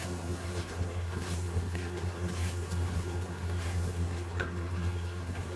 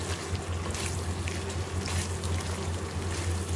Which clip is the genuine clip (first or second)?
second